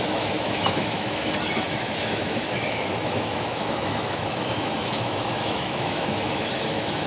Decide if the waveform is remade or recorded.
remade